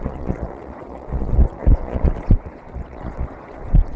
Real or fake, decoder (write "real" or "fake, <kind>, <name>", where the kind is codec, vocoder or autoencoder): fake, vocoder, Vocos